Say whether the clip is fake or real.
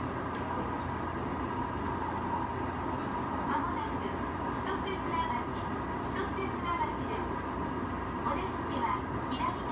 real